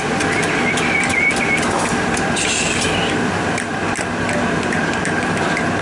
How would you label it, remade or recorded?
remade